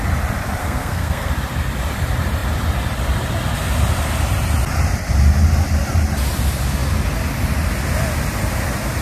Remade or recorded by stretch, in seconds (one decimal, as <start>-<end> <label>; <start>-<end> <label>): 0.0-0.6 recorded; 0.6-1.3 remade; 1.3-9.0 recorded